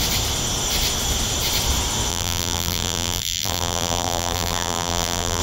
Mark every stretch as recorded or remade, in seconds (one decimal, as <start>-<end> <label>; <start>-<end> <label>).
0.0-2.1 recorded; 2.1-5.4 remade